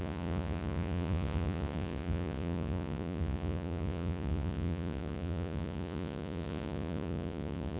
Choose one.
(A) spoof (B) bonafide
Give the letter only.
A